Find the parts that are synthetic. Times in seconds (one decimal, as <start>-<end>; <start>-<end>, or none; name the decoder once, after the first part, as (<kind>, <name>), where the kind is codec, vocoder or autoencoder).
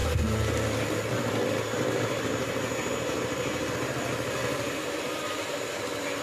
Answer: 4.4-6.2 (vocoder, BigVGAN v2)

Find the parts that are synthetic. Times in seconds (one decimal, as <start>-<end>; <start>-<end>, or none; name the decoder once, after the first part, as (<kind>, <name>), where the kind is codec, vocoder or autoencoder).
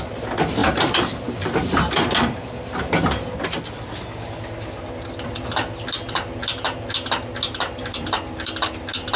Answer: 0.6-2.8 (vocoder, BigVGAN v2)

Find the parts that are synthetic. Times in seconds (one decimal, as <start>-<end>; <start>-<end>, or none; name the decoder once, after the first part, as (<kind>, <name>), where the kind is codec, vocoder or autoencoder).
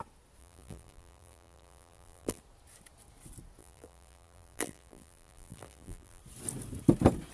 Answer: 0.4-2.4 (vocoder, BigVGAN v2); 3.6-6.2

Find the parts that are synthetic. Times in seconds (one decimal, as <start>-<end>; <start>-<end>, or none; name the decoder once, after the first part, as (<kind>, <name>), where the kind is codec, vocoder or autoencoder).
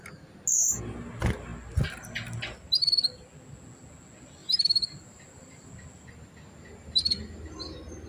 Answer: 4.4-5.7 (vocoder, BigVGAN v2)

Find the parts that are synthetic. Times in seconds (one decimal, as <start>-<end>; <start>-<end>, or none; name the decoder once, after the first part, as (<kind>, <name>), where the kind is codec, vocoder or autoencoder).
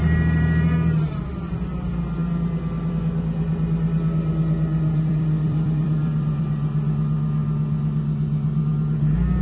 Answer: 4.7-6.5 (vocoder, BigVGAN v2)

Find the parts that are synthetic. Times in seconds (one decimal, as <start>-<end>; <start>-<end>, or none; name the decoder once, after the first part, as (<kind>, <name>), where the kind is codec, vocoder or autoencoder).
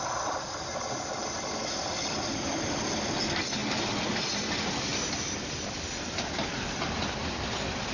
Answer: 0.0-4.9 (vocoder, BigVGAN v2); 5.5-7.9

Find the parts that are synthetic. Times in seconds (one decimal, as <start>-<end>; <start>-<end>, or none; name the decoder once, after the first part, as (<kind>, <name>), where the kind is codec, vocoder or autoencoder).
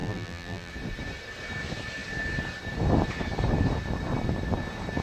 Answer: 0.0-0.7 (vocoder, BigVGAN v2)